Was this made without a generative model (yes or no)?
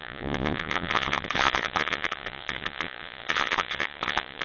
no